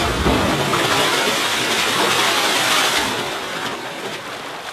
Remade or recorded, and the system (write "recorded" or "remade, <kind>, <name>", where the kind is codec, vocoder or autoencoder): recorded